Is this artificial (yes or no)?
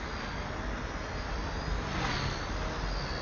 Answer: no